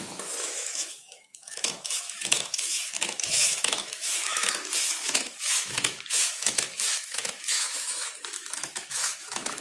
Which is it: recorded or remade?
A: remade